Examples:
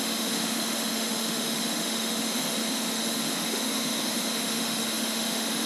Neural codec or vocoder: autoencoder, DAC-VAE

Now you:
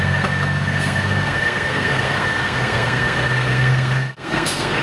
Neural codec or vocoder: codec, SNAC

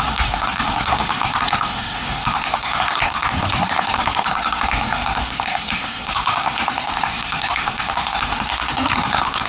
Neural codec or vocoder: codec, SNAC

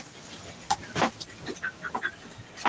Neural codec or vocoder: none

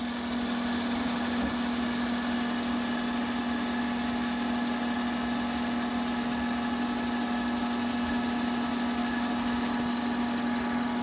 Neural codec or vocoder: none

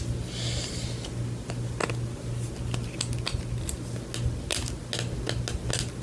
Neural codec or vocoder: none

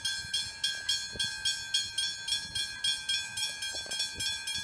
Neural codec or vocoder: none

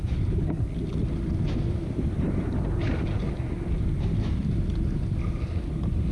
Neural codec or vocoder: none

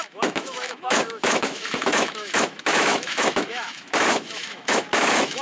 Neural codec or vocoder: autoencoder, DAC-VAE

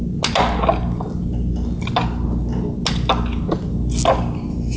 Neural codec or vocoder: none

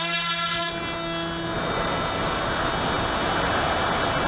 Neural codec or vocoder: none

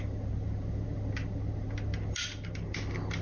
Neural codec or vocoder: none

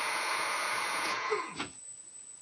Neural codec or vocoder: vocoder, Vocos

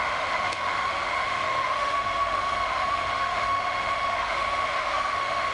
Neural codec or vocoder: autoencoder, DAC-VAE